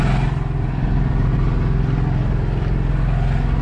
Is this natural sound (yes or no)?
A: yes